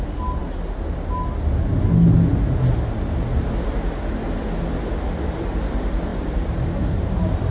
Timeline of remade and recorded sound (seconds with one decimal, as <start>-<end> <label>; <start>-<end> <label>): 0.0-6.1 recorded; 6.1-7.5 remade